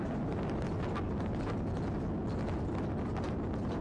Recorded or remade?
recorded